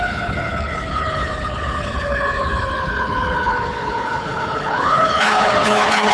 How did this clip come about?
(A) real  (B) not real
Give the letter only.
B